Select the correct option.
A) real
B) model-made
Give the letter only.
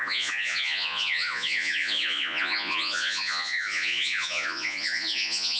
B